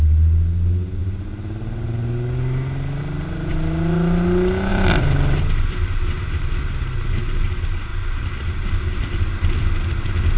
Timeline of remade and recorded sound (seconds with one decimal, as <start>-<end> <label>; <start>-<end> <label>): 0.0-4.7 recorded; 4.7-6.1 remade; 6.1-7.9 recorded; 7.9-9.7 remade; 9.7-10.4 recorded